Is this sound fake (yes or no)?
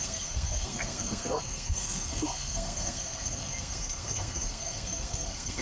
yes